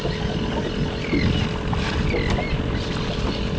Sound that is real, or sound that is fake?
real